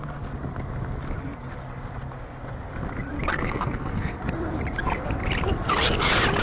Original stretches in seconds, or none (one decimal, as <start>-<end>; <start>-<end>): 0.0-3.3; 4.2-6.4